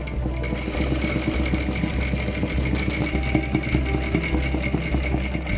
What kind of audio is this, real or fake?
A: real